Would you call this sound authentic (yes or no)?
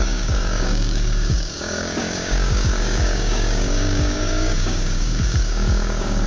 no